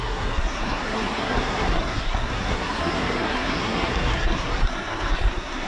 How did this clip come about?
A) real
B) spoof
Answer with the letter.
B